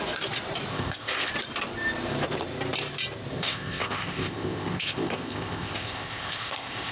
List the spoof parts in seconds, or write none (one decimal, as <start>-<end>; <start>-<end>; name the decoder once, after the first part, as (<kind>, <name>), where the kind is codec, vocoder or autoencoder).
0.7-1.3 (codec, ZipCodec); 3.3-6.9